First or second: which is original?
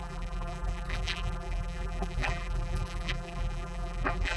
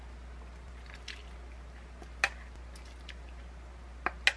second